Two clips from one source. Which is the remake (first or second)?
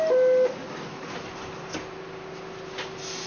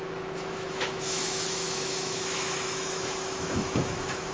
second